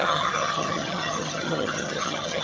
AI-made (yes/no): yes